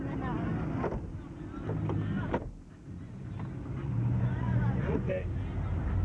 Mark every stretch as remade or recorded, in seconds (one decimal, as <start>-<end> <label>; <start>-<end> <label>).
0.0-3.8 recorded; 3.8-5.1 remade; 5.1-6.0 recorded